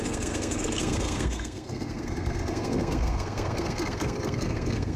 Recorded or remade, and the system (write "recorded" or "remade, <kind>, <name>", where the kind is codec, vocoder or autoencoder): remade, codec, SNAC